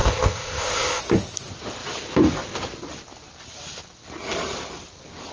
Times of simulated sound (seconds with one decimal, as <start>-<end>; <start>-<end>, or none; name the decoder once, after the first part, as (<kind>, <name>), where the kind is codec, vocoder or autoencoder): 0.0-1.0 (codec, ZipCodec)